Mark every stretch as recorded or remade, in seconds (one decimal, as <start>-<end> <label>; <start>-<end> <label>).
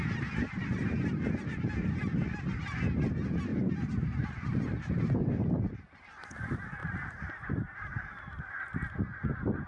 0.0-3.5 recorded; 3.5-5.0 remade; 5.0-6.8 recorded; 6.8-8.5 remade; 8.5-9.7 recorded